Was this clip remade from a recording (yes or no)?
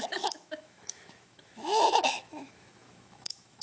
yes